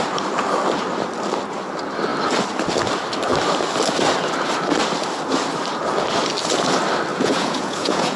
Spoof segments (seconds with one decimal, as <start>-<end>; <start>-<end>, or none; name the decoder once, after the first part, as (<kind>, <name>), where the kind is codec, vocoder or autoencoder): 7.1-8.2 (vocoder, Vocos)